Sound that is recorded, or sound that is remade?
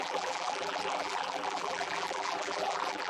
remade